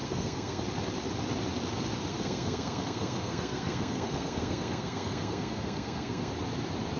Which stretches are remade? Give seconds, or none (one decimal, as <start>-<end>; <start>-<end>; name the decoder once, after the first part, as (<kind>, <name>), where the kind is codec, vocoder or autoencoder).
0.0-0.6 (codec, SNAC); 2.1-6.3